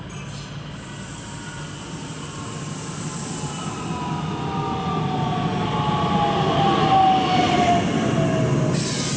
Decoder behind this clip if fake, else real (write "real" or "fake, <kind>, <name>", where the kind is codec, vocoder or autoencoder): real